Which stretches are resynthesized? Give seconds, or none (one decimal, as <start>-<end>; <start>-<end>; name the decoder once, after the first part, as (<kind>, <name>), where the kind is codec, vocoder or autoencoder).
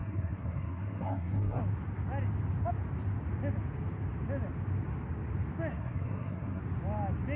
0.0-1.6 (codec, SNAC); 5.7-6.6